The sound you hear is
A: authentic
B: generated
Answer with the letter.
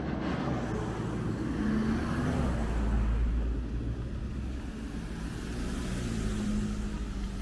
A